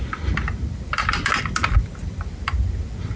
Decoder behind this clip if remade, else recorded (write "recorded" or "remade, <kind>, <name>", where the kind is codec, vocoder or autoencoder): remade, vocoder, BigVGAN v2